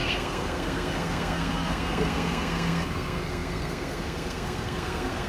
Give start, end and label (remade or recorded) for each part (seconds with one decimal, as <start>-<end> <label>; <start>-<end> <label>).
0.0-5.3 remade